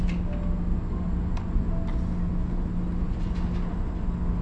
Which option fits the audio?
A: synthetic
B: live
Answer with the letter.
B